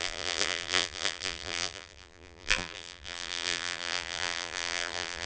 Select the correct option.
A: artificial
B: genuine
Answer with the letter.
A